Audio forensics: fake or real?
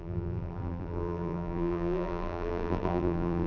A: fake